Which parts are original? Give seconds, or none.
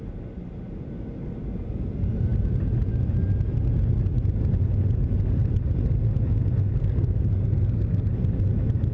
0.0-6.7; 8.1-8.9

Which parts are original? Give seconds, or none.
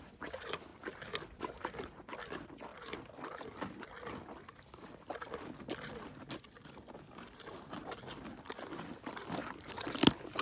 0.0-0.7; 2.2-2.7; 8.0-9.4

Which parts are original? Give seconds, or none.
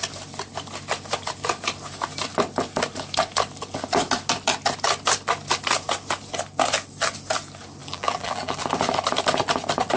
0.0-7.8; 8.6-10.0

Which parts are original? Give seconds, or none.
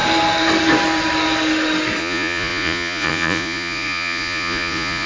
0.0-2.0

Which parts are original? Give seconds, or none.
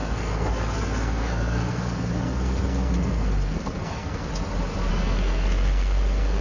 4.3-4.9